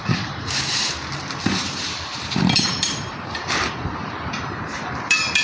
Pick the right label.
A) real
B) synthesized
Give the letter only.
B